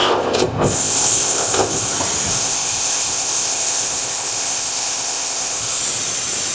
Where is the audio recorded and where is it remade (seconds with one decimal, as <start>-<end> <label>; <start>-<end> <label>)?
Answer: 0.0-1.9 remade; 1.9-2.3 recorded; 2.3-5.8 remade; 5.8-6.5 recorded